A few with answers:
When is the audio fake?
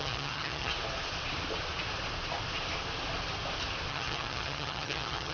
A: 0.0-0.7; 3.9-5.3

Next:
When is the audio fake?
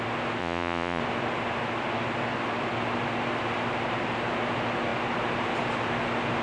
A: 0.4-1.0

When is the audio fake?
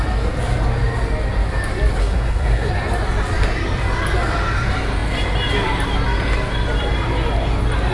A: 2.0-2.7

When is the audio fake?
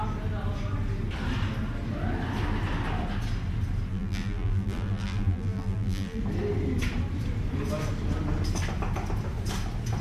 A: 3.9-6.2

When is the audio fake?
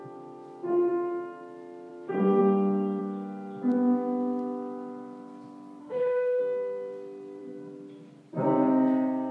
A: 5.8-6.4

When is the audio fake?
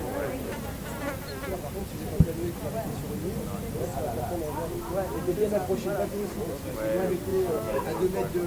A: 7.3-7.8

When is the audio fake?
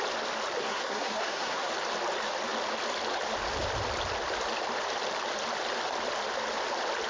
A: 0.6-1.7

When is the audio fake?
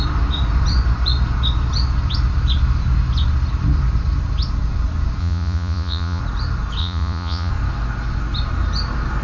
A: 5.2-6.2; 6.8-7.5